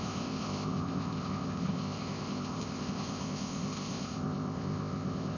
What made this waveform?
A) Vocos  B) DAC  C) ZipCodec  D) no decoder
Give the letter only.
C